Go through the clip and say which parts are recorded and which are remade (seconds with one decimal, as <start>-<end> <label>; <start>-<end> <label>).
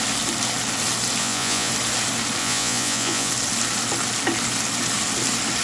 0.0-1.2 recorded; 1.2-1.7 remade; 1.7-2.4 recorded; 2.4-3.3 remade; 3.3-5.6 recorded